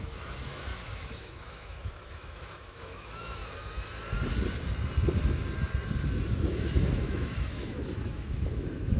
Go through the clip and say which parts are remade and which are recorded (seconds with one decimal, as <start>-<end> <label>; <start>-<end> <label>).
0.0-3.4 remade; 3.4-6.3 recorded; 6.3-9.0 remade